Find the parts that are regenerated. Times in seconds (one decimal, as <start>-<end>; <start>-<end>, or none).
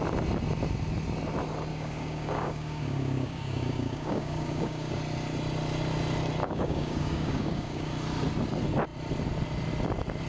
1.7-5.0; 6.4-7.9